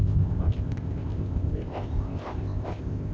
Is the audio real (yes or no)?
no